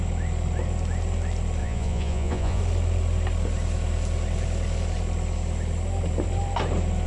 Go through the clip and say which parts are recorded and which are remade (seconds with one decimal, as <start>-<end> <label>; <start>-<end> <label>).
0.0-1.6 recorded; 1.6-2.6 remade; 2.6-7.1 recorded